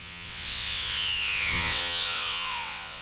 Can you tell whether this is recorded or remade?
remade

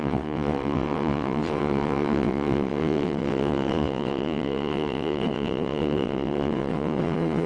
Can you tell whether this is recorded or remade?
remade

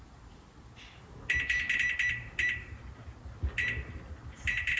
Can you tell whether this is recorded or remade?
recorded